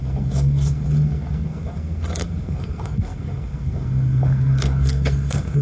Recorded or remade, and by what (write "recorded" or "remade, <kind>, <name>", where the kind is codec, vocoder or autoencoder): remade, codec, SNAC